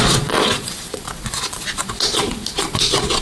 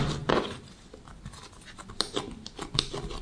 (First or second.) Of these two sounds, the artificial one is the first